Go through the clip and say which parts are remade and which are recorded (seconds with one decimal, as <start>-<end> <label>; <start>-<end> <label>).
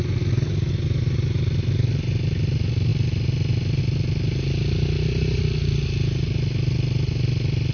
0.0-7.7 recorded